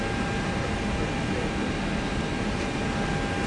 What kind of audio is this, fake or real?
real